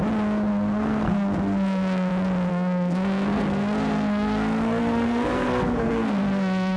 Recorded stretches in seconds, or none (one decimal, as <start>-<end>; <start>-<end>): 0.0-0.5; 2.1-2.5